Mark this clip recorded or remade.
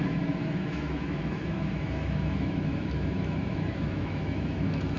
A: remade